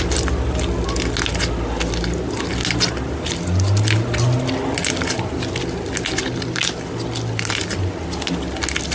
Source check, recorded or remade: recorded